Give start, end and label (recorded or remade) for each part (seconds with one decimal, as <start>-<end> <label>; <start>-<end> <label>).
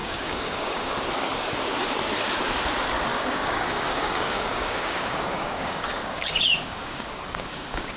0.0-0.9 remade; 0.9-3.1 recorded; 3.1-8.0 remade